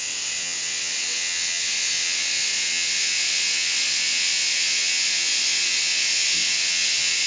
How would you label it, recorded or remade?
remade